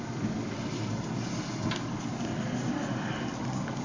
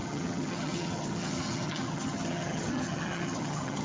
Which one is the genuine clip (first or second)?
first